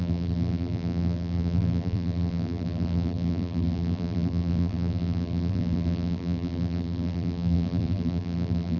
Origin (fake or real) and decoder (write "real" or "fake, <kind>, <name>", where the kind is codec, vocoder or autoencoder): fake, vocoder, BigVGAN v2